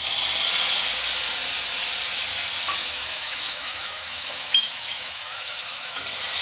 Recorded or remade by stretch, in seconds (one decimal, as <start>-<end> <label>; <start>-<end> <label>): 0.0-2.8 recorded; 2.8-6.0 remade; 6.0-6.4 recorded